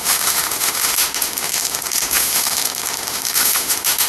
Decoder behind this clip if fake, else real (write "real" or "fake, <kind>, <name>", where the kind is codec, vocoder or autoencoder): fake, autoencoder, DAC-VAE